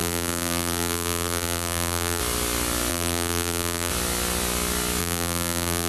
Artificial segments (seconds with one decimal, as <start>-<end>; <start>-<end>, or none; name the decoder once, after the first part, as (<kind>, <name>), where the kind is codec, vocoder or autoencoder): 0.0-2.2 (vocoder, BigVGAN v2); 2.9-3.9; 5.0-5.9